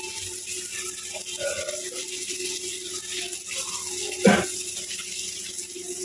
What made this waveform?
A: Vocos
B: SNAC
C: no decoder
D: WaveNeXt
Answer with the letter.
C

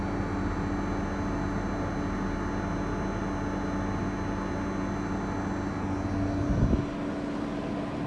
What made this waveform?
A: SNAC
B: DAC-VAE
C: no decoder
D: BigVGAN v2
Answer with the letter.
C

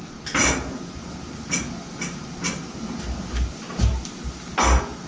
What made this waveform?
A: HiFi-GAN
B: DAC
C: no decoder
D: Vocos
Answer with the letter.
C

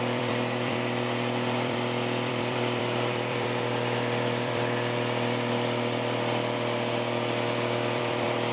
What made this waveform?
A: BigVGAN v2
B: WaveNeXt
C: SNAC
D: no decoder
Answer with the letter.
A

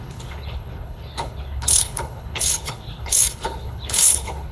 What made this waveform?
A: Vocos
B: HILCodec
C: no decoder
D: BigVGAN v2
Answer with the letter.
B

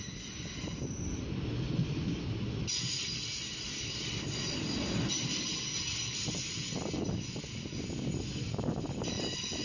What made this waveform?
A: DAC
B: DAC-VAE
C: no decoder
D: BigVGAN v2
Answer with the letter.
C